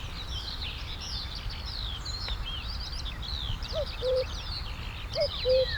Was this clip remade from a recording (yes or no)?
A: yes